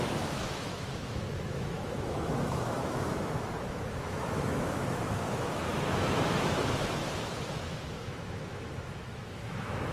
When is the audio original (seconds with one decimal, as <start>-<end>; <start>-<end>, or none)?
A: none